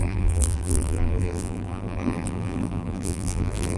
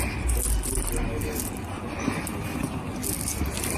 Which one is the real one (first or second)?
second